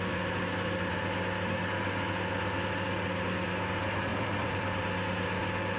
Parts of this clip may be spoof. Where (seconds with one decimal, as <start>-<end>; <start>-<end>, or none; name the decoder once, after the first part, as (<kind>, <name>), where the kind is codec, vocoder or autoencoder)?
4.1-4.8 (vocoder, BigVGAN v2)